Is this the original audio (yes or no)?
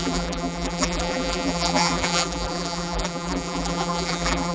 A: no